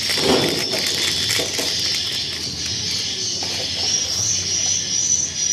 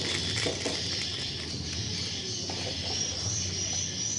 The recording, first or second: first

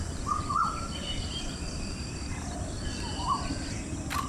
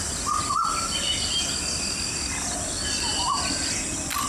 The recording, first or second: second